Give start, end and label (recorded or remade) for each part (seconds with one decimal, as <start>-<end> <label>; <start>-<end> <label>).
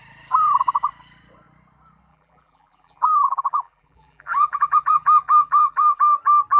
0.0-2.1 recorded; 2.1-6.0 remade; 6.0-6.6 recorded